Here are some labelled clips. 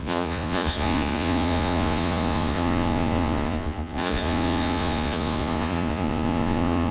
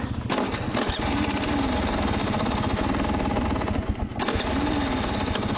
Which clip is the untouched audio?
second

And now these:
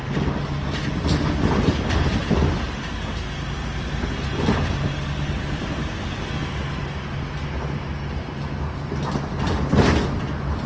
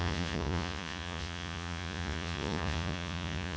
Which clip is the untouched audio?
first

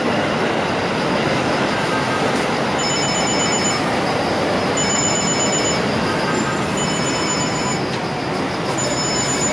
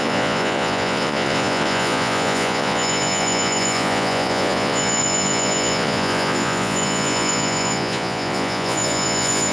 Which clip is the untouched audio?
first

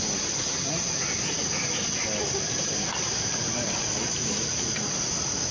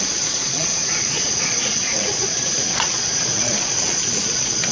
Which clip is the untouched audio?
first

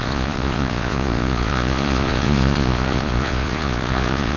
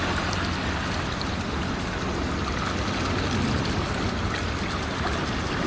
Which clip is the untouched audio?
second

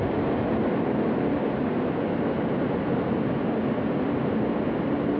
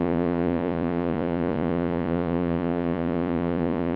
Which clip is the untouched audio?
first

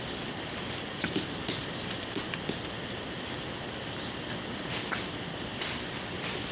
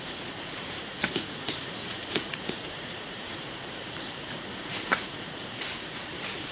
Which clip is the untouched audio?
first